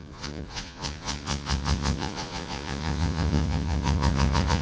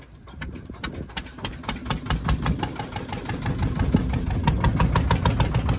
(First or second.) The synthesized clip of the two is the first